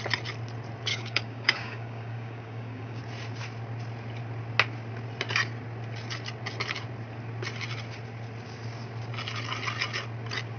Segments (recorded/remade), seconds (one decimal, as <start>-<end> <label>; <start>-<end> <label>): 0.0-0.9 recorded; 0.9-3.0 remade; 3.0-10.6 recorded